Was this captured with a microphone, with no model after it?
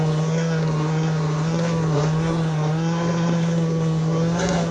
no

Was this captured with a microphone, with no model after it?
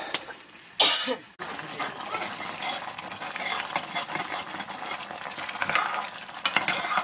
yes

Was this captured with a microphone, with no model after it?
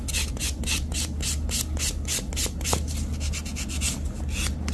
yes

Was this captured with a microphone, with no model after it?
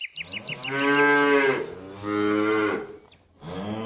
yes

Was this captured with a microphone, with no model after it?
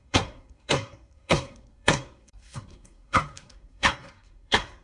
no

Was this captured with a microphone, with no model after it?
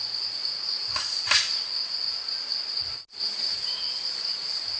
yes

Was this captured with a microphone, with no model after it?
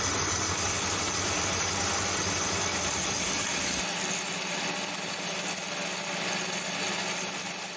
yes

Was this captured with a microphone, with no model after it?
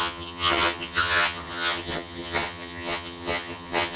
no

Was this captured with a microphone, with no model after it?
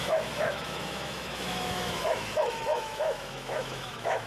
no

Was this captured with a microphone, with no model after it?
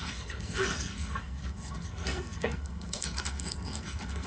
no